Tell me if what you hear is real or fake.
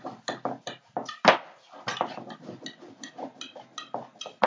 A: real